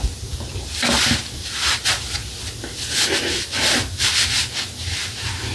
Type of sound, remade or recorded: recorded